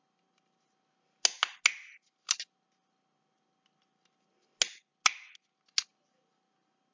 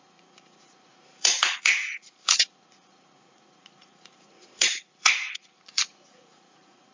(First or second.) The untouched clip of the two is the first